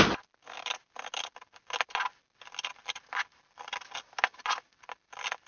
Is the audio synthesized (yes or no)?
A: no